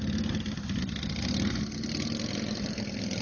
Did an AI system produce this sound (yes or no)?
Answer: no